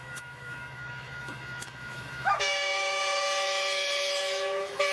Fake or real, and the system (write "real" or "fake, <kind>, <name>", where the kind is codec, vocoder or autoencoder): fake, autoencoder, DAC-VAE